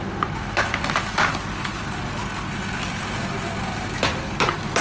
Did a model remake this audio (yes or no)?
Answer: no